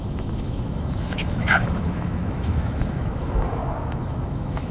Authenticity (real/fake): fake